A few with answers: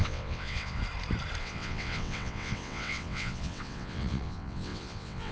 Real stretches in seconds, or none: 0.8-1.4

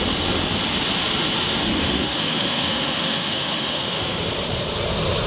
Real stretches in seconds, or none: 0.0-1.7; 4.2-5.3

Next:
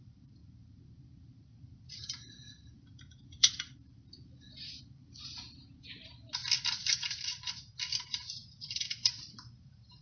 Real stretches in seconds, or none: 6.4-6.9

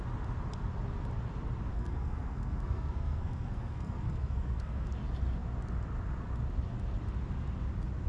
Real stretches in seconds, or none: 0.0-1.7; 4.9-8.1